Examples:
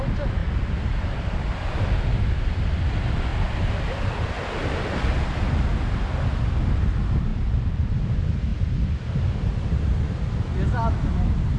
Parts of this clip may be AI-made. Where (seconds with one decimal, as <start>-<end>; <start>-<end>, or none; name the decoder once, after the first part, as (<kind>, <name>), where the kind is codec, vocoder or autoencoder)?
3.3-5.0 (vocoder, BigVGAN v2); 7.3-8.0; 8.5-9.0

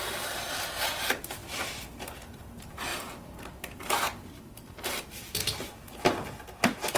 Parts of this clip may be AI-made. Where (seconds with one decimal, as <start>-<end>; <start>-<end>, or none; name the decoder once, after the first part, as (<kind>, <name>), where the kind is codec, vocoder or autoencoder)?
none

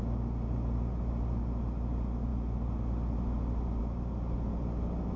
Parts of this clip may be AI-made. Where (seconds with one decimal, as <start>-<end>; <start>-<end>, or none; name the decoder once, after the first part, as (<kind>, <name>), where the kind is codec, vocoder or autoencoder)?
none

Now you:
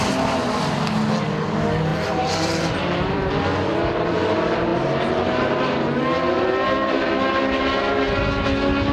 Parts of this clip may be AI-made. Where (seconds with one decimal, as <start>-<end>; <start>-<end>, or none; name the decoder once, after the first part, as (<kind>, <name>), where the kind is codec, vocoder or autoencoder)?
1.9-3.3 (vocoder, BigVGAN v2)

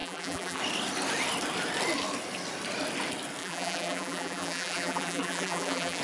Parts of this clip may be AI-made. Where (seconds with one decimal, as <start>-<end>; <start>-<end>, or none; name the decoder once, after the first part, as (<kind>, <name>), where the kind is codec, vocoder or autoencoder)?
0.0-0.6 (vocoder, BigVGAN v2); 3.4-6.0